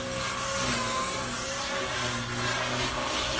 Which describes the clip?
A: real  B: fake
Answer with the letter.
A